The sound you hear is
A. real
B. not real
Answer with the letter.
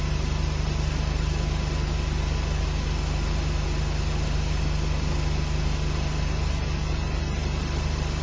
A